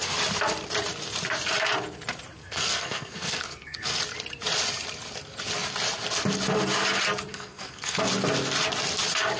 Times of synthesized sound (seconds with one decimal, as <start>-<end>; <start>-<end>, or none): 2.4-4.0; 7.3-8.1